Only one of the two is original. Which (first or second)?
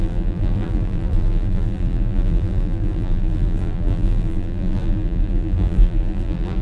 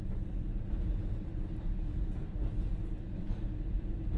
second